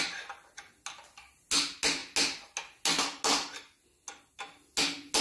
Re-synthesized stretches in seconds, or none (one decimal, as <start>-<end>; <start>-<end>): none